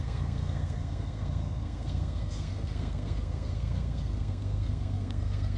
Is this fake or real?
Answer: fake